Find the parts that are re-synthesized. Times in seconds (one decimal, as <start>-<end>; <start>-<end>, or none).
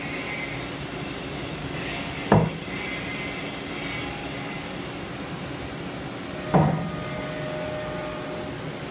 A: 1.6-2.3; 4.2-4.8